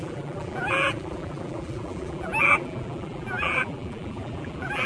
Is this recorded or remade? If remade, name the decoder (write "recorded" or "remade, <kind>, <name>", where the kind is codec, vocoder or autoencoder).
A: remade, vocoder, BigVGAN v2